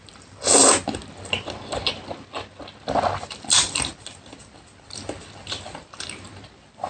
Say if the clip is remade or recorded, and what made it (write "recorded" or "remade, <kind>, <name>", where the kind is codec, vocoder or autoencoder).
recorded